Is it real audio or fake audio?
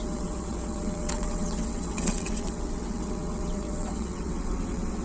fake